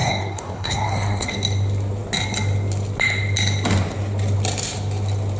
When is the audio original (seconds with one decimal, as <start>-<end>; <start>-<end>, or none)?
1.3-5.4